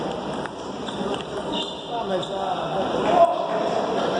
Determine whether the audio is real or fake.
fake